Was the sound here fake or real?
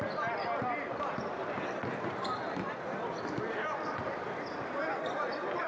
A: real